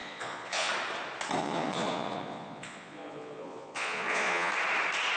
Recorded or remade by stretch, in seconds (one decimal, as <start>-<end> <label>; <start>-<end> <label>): 0.0-0.7 remade; 0.7-1.4 recorded; 1.4-4.5 remade; 4.5-5.2 recorded